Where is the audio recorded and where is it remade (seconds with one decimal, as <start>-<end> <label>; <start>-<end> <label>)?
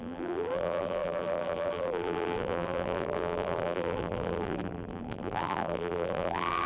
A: 0.0-6.7 remade